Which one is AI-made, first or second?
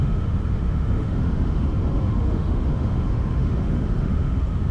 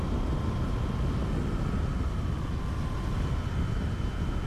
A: first